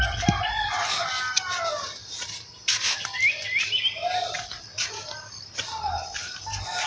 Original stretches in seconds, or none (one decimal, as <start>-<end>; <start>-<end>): 0.0-6.9